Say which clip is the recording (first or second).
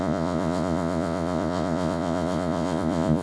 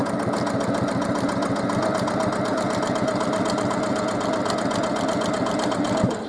second